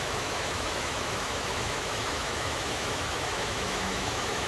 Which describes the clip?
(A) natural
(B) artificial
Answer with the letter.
B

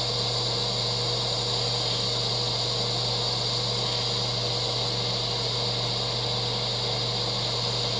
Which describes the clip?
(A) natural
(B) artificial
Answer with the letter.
A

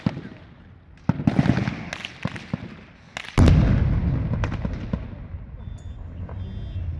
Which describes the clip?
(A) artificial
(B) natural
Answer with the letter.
B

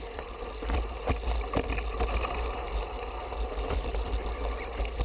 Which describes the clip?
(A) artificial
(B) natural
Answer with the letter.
B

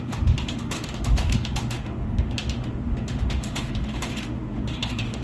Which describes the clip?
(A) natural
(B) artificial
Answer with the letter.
B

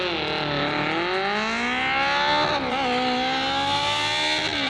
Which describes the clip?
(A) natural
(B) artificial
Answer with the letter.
A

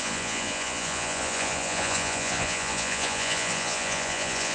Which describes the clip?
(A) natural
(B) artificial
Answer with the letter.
B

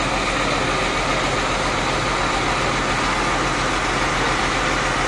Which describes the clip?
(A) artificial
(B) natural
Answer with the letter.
B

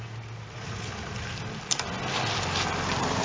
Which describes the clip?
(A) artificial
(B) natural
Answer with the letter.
B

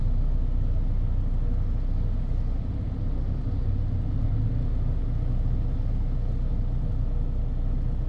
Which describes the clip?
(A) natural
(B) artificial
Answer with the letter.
A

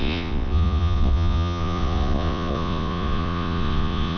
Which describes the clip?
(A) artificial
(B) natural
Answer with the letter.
A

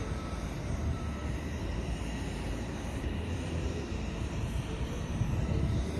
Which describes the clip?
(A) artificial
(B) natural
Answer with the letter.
A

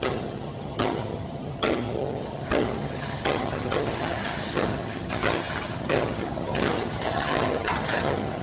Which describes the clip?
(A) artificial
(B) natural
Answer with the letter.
A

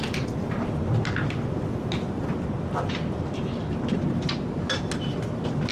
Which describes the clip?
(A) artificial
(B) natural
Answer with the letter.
B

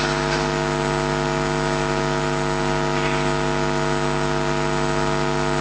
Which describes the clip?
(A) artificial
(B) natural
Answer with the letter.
B